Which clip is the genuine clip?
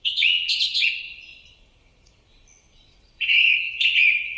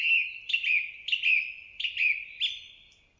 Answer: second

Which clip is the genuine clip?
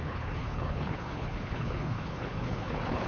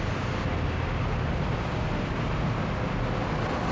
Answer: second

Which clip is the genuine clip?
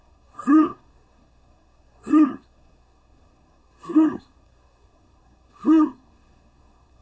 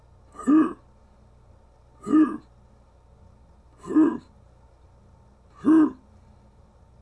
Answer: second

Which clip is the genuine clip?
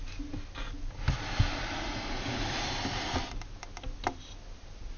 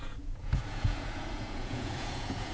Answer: first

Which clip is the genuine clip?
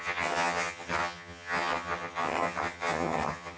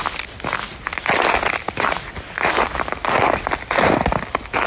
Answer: second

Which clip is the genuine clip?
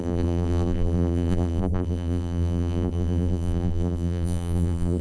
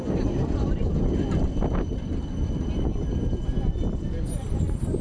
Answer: second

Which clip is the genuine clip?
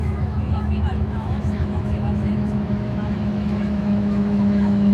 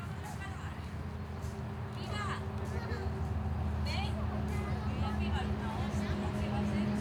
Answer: second